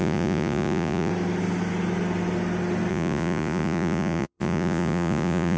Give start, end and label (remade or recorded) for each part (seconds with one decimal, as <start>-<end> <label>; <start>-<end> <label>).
0.0-1.1 remade; 1.1-2.9 recorded; 2.9-5.6 remade